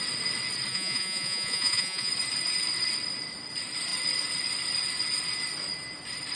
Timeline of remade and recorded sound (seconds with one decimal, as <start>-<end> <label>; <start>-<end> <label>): 0.0-0.7 recorded; 0.7-2.1 remade; 2.1-6.4 recorded